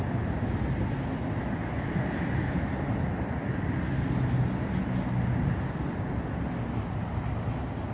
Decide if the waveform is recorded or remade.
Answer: recorded